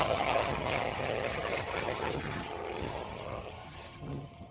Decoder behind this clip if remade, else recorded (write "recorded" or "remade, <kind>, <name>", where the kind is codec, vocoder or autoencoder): remade, vocoder, HiFi-GAN